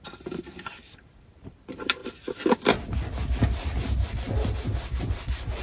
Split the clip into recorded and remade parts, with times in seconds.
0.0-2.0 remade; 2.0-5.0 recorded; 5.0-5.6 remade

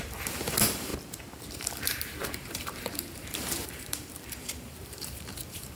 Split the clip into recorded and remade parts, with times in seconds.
0.0-0.9 remade; 0.9-1.6 recorded; 1.6-5.8 remade

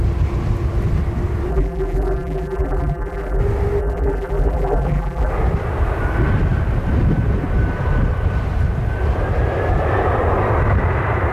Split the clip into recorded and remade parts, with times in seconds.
0.0-1.5 recorded; 1.5-3.4 remade; 3.4-3.8 recorded; 3.8-5.3 remade; 5.3-11.3 recorded

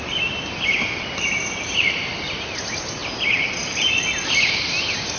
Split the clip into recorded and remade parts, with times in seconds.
0.0-3.0 recorded; 3.0-4.6 remade; 4.6-5.2 recorded

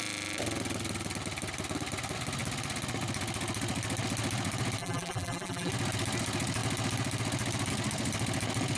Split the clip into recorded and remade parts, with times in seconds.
0.0-4.8 recorded; 4.8-5.7 remade; 5.7-8.8 recorded

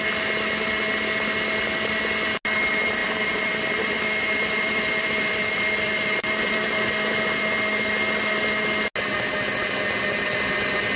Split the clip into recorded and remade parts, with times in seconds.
0.0-3.0 recorded; 3.0-7.9 remade; 7.9-11.0 recorded